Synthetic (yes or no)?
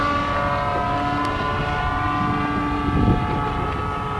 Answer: no